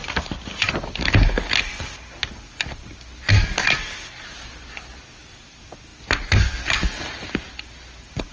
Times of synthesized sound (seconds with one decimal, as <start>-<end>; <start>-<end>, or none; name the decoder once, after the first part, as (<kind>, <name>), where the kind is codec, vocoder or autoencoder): none

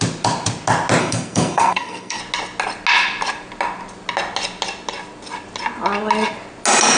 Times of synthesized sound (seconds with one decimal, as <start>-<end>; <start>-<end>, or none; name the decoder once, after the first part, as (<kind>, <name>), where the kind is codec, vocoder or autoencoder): 1.0-2.2 (codec, SNAC)

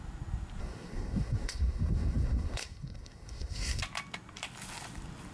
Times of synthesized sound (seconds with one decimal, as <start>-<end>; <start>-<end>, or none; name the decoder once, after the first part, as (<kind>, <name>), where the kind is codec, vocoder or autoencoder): 0.6-3.8 (codec, SNAC)

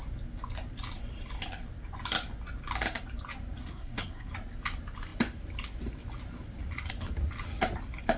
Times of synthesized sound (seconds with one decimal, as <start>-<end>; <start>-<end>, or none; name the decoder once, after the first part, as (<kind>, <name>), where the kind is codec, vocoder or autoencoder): 3.6-4.3 (codec, SNAC)

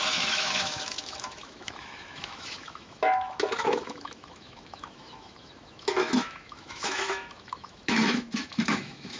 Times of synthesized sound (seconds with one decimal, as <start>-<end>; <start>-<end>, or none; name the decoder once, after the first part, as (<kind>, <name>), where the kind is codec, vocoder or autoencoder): 0.0-9.2 (autoencoder, DAC-VAE)